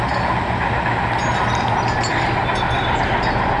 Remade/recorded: recorded